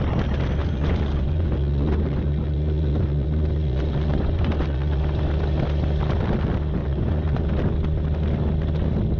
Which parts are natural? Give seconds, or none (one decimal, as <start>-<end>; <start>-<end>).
0.0-0.6; 5.0-6.8; 7.5-9.2